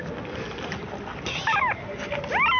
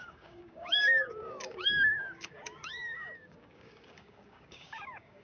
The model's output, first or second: second